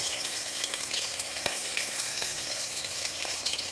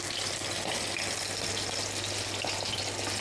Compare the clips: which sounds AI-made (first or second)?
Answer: first